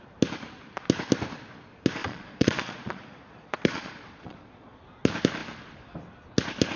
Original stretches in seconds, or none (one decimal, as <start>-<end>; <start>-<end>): 0.0-2.0; 4.8-6.8